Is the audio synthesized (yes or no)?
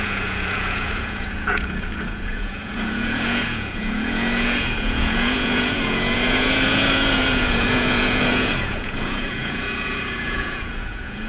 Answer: yes